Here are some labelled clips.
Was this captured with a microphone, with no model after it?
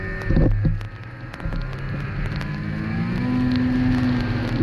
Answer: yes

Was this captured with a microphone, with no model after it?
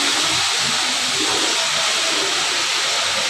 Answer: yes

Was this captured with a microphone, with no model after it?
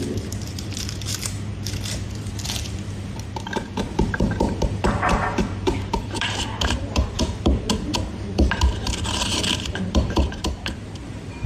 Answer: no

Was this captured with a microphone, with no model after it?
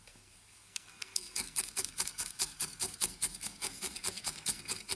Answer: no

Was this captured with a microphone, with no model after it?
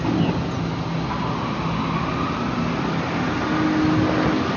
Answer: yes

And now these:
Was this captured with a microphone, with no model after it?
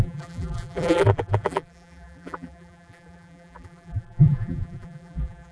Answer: no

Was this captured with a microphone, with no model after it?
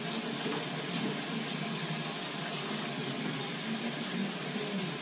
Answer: yes